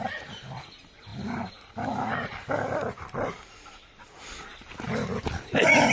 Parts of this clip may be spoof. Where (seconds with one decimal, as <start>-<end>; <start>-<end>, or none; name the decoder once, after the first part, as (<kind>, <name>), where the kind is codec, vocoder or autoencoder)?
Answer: none